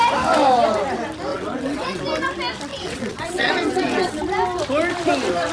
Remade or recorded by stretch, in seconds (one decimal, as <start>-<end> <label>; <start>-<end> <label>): 0.0-1.3 recorded; 1.3-2.0 remade; 2.0-2.7 recorded; 2.7-4.2 remade; 4.2-5.5 recorded